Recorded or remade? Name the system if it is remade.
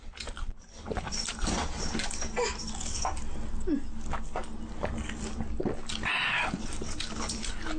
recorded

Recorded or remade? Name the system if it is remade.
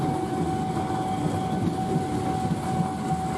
recorded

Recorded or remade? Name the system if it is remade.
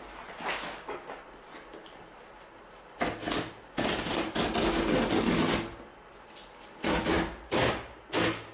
recorded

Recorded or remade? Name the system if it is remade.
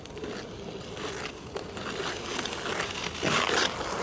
recorded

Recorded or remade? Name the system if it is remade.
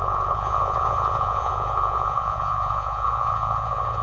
remade, vocoder, Vocos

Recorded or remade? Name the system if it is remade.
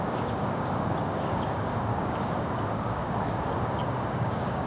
remade, codec, DAC